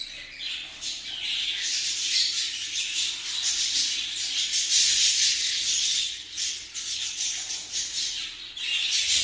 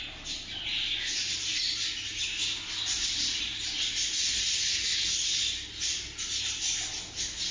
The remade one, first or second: first